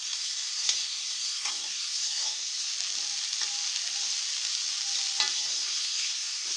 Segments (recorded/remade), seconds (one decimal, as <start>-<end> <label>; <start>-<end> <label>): 0.0-2.7 remade; 2.7-5.3 recorded; 5.3-6.6 remade

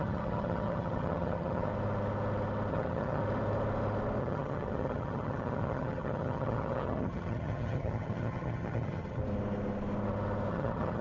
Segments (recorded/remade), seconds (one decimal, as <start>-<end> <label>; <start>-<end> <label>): 0.0-1.7 remade; 1.7-2.7 recorded; 2.7-3.2 remade; 3.2-4.2 recorded; 4.2-9.2 remade; 9.2-10.5 recorded; 10.5-11.0 remade

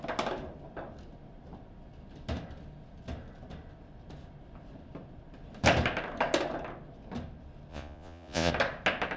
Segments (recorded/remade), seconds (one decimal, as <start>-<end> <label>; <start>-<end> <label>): 0.0-7.7 recorded; 7.7-8.5 remade; 8.5-9.2 recorded

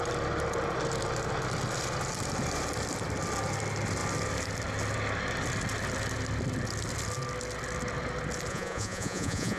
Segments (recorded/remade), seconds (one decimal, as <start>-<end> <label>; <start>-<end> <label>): 0.0-8.5 recorded; 8.5-9.6 remade

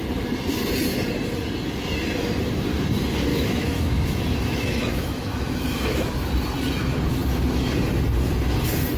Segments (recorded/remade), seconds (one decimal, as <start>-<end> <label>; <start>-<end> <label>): 0.0-3.3 recorded; 3.3-6.2 remade; 6.2-9.0 recorded

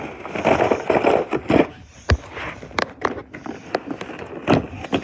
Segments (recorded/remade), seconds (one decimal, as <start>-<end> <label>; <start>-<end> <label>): 0.0-5.0 recorded